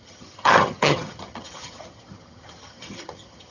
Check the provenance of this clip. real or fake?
fake